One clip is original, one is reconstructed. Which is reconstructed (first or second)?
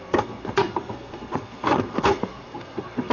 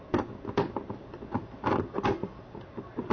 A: first